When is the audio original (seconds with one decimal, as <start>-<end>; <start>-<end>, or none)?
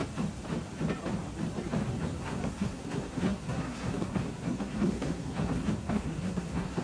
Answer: 0.0-2.2